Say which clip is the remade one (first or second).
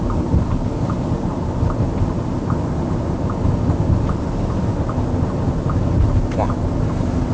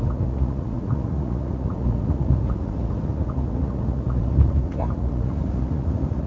second